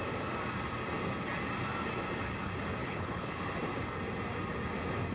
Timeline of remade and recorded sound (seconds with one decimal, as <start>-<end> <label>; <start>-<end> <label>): 0.0-2.8 recorded; 2.8-3.4 remade; 3.4-5.1 recorded

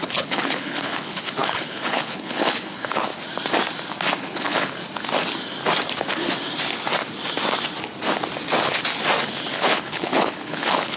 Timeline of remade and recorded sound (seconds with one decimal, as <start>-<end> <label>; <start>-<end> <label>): 0.0-3.1 remade; 3.1-4.2 recorded; 4.2-4.8 remade; 4.8-9.5 recorded; 9.5-11.0 remade

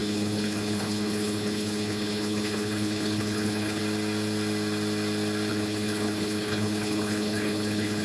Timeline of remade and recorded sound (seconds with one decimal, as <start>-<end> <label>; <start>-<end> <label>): 0.0-3.8 remade; 3.8-5.5 recorded; 5.5-8.0 remade

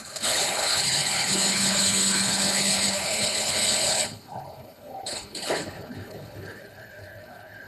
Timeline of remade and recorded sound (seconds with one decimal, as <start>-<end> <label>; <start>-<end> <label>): 0.0-7.7 remade

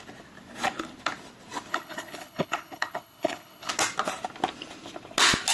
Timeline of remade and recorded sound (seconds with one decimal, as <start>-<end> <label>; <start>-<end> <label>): 0.0-1.7 recorded; 1.7-3.7 remade; 3.7-5.5 recorded

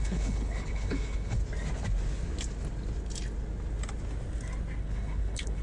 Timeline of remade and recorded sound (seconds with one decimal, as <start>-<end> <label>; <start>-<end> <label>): 0.0-1.4 remade; 1.4-4.8 recorded; 4.8-5.6 remade

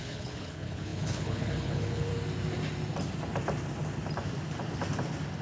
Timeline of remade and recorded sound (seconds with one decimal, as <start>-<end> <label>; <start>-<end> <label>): 0.0-2.1 remade; 2.1-5.4 recorded